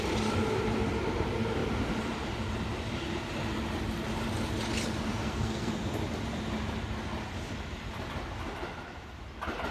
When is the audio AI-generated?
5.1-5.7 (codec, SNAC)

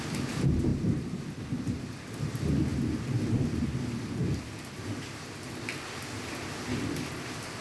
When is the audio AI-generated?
none

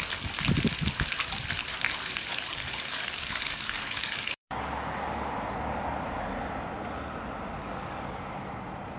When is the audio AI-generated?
2.3-5.3 (codec, DAC); 7.6-8.2